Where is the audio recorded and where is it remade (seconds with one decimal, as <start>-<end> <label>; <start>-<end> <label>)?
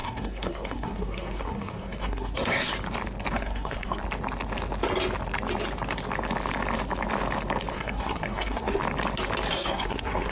0.0-2.7 remade; 2.7-3.3 recorded; 3.3-4.0 remade; 4.0-7.7 recorded; 7.7-8.8 remade; 8.8-9.5 recorded; 9.5-10.3 remade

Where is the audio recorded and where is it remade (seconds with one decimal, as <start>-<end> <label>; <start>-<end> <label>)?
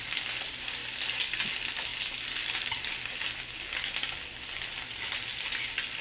0.0-6.0 recorded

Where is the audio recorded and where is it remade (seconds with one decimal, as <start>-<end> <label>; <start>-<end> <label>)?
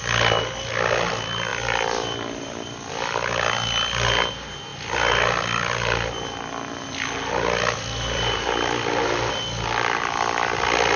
0.0-4.7 recorded; 4.7-9.3 remade; 9.3-11.0 recorded